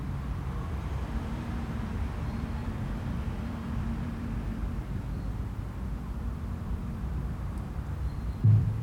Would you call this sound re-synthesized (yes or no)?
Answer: yes